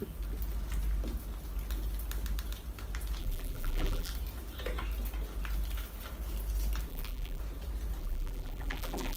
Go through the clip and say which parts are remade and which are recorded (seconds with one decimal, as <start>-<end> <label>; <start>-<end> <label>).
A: 0.0-3.2 recorded; 3.2-4.1 remade; 4.1-6.9 recorded; 6.9-7.4 remade; 7.4-8.0 recorded; 8.0-9.2 remade